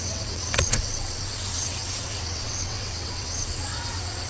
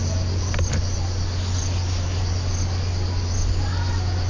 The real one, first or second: second